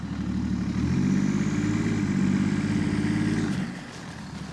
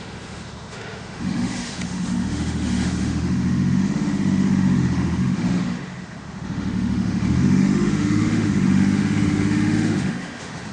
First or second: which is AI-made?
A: second